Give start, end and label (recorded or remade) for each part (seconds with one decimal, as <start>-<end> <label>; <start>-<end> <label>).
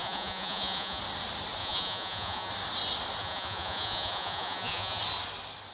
0.0-1.0 remade; 1.0-1.6 recorded; 1.6-2.5 remade; 2.5-3.2 recorded; 3.2-5.0 remade; 5.0-5.7 recorded